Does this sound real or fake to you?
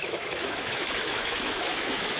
fake